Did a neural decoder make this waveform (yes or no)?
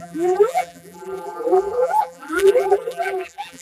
yes